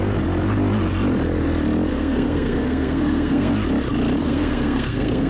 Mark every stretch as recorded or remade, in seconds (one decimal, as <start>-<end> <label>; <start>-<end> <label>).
0.0-1.9 recorded; 1.9-3.5 remade; 3.5-4.2 recorded; 4.2-5.3 remade

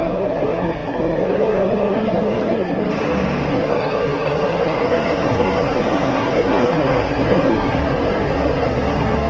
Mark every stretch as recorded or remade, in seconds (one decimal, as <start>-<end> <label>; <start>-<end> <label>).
0.0-2.8 remade; 2.8-3.5 recorded; 3.5-9.3 remade

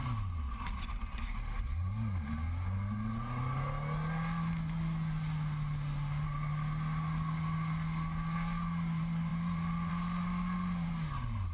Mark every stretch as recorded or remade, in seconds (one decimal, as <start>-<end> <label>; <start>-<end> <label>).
0.0-11.5 recorded

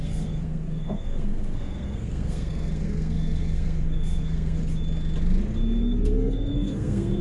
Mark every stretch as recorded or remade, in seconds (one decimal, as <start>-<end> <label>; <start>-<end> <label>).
0.0-4.6 remade; 4.6-5.8 recorded; 5.8-7.2 remade

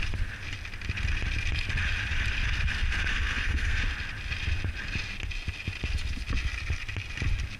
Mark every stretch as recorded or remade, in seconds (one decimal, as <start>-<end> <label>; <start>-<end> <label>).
0.0-3.1 recorded; 3.1-3.8 remade; 3.8-7.6 recorded

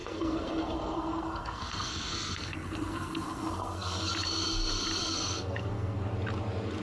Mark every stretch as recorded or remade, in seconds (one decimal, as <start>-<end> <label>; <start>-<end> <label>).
0.0-4.1 remade; 4.1-5.0 recorded; 5.0-6.0 remade; 6.0-6.8 recorded